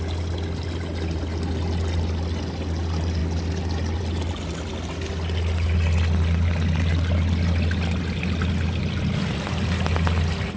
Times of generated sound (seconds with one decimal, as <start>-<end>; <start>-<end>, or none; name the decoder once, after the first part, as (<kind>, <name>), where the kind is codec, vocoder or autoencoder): none